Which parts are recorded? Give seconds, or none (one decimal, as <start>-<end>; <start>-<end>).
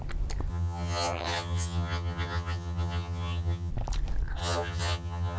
0.0-0.5; 3.7-4.4